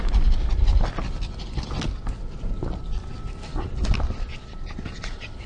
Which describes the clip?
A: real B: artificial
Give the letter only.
A